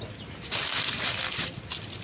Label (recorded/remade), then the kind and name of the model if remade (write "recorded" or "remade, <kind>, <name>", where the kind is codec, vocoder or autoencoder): recorded